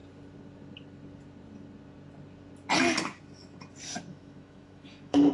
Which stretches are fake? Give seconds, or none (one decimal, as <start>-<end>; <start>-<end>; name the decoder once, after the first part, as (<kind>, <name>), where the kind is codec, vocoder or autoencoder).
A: 4.1-5.3 (autoencoder, DAC-VAE)